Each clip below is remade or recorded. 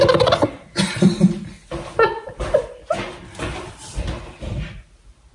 recorded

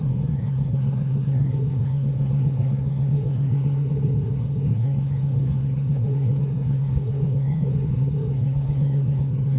remade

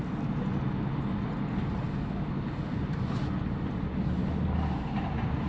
recorded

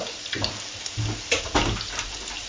recorded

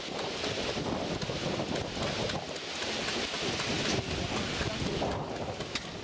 recorded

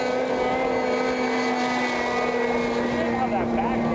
recorded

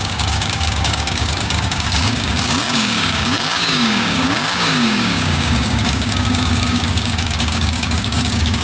remade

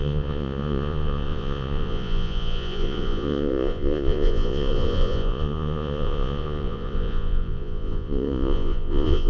remade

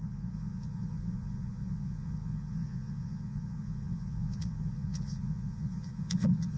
remade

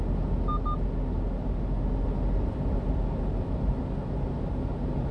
recorded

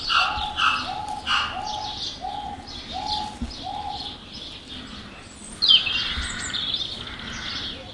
recorded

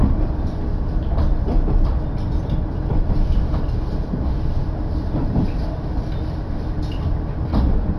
recorded